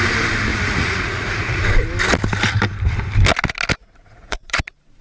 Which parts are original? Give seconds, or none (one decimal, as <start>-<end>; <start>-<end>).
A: 0.0-0.5; 1.6-3.8; 4.6-5.0